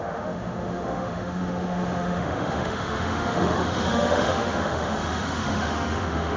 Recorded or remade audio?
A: remade